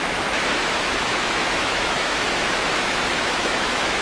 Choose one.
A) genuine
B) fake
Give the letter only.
B